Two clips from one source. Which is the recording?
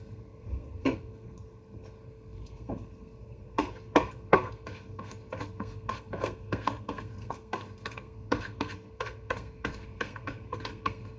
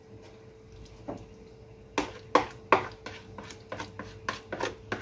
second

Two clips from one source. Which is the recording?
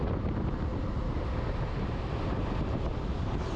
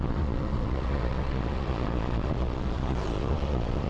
first